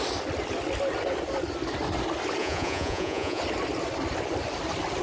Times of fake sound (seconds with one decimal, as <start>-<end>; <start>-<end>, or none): 2.4-3.4